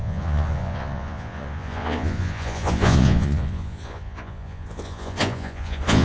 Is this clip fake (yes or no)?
yes